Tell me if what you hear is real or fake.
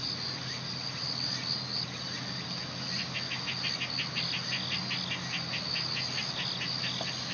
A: real